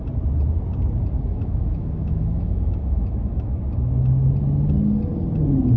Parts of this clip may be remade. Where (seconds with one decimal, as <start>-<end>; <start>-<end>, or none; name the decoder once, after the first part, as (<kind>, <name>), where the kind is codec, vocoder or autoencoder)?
1.3-4.3 (autoencoder, DAC-VAE)